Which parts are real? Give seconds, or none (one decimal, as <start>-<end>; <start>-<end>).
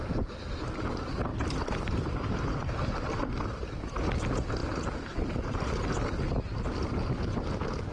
0.0-1.3; 3.9-4.6; 5.9-7.9